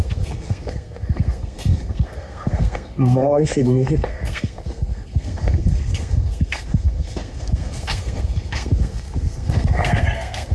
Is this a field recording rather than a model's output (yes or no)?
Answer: no